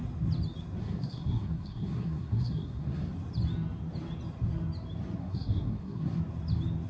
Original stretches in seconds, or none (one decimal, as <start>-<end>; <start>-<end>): 0.0-0.8; 3.1-5.2; 6.2-6.9